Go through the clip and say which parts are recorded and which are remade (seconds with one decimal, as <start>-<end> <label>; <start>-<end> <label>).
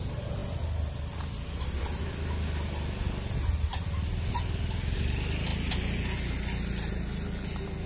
0.0-7.9 recorded